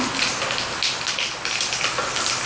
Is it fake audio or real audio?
real